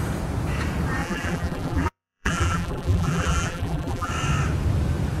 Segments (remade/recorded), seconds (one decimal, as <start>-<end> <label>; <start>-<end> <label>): 0.0-1.0 recorded; 1.0-4.1 remade; 4.1-5.2 recorded